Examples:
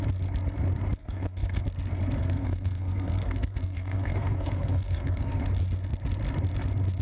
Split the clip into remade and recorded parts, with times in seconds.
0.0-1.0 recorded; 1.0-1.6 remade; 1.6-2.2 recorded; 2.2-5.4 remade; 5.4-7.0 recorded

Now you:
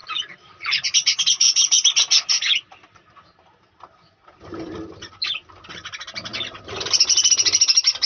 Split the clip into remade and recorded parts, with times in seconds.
0.0-1.2 remade; 1.2-8.1 recorded

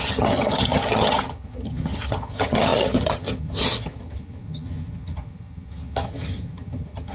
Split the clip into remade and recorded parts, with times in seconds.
0.0-7.1 remade

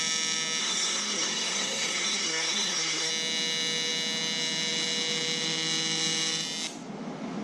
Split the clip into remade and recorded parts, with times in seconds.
0.0-0.6 recorded; 0.6-3.1 remade; 3.1-7.4 recorded

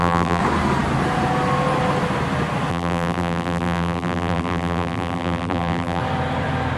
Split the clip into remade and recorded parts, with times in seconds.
0.0-0.4 remade; 0.4-2.7 recorded; 2.7-6.0 remade; 6.0-6.8 recorded

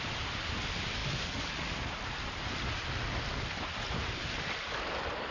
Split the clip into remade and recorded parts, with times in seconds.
0.0-5.3 recorded

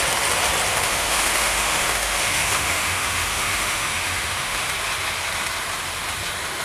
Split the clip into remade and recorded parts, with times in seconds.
0.0-0.7 recorded; 0.7-4.7 remade; 4.7-6.6 recorded